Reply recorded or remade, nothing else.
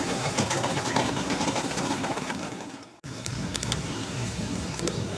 remade